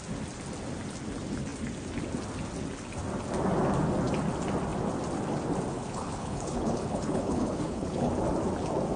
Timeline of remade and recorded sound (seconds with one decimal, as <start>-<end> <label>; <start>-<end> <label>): 0.0-5.7 recorded; 5.7-8.1 remade; 8.1-9.0 recorded